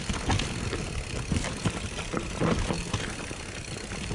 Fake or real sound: real